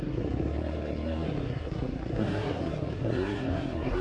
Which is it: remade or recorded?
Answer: remade